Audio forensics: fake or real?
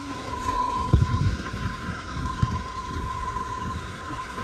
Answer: fake